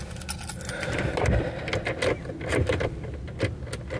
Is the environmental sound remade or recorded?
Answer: recorded